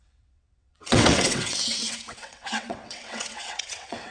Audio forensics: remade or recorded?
remade